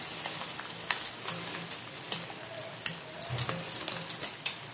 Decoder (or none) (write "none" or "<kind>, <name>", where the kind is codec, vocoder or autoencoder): none